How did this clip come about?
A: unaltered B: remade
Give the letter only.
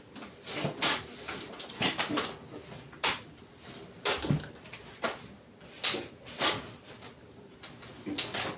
A